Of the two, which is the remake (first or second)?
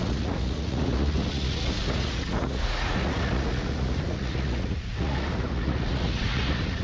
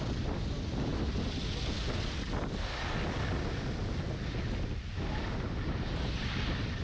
first